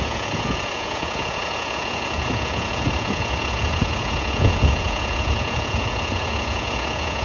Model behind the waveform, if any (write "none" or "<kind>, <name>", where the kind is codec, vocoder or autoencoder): vocoder, Vocos